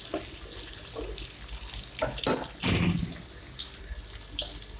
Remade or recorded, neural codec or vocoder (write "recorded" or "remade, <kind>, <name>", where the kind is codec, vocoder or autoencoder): recorded